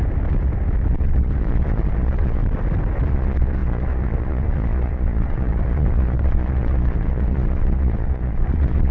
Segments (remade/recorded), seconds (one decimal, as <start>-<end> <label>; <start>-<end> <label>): 0.0-0.9 recorded; 0.9-2.4 remade; 2.4-3.1 recorded; 3.1-8.9 remade